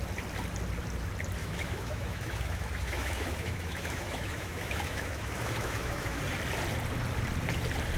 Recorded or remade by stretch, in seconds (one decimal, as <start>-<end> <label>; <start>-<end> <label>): 0.0-1.4 recorded; 1.4-6.2 remade; 6.2-8.0 recorded